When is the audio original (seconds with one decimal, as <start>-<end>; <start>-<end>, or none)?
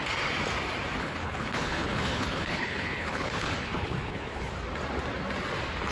0.0-1.0; 4.5-5.9